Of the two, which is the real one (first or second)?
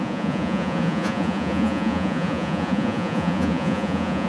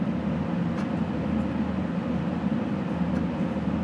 second